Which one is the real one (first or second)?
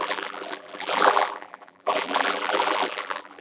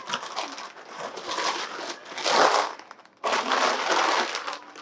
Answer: second